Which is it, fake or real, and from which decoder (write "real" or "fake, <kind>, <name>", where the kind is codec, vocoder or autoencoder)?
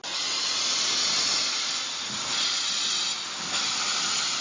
real